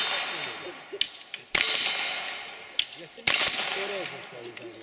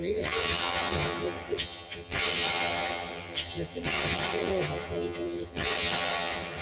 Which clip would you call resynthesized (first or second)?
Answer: second